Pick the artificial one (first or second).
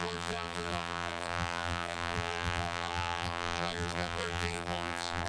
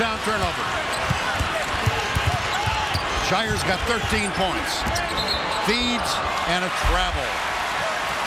first